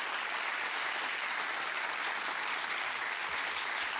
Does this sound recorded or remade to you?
recorded